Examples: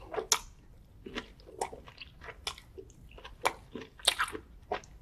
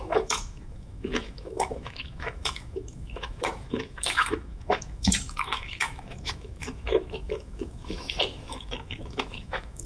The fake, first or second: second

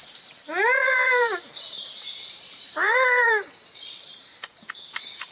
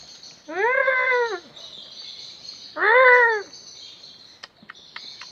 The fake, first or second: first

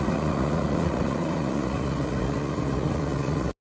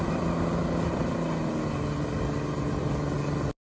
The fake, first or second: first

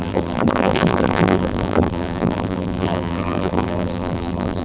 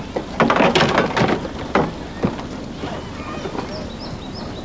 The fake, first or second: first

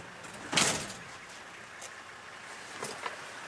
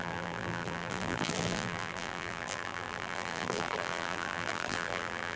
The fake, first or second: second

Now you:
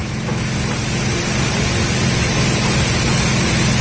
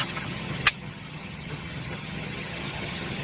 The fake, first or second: second